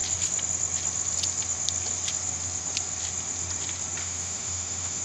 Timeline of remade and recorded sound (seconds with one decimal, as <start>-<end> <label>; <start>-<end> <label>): 0.0-4.0 recorded; 4.0-5.0 remade